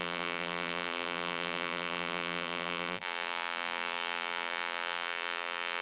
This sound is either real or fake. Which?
fake